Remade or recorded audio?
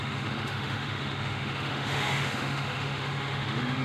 remade